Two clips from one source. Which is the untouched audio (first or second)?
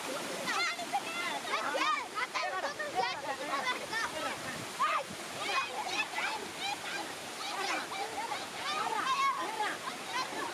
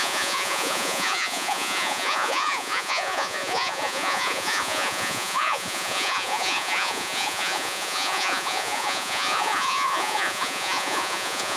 first